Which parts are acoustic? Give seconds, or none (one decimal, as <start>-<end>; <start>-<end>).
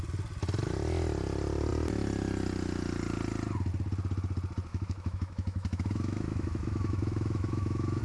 0.0-4.7